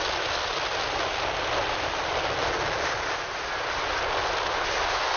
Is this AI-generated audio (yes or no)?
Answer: no